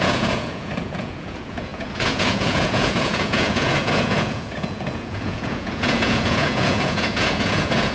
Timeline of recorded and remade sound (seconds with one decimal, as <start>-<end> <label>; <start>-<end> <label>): 0.0-7.9 remade